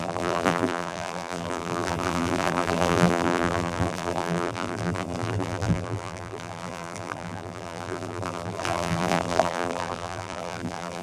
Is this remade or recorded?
remade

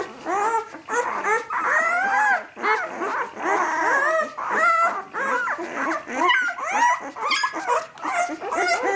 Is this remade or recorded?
recorded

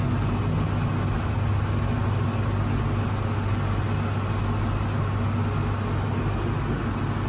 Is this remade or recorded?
recorded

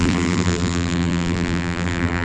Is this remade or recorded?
remade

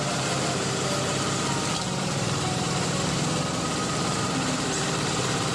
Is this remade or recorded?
remade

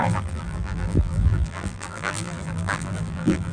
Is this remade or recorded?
remade